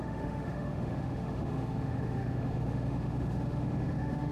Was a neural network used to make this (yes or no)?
yes